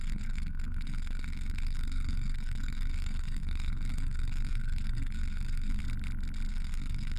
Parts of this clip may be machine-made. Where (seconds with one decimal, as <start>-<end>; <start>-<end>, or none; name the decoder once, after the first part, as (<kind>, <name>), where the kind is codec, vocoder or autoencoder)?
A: 0.0-5.8 (codec, SNAC); 6.5-7.2